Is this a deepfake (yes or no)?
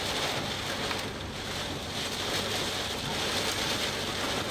no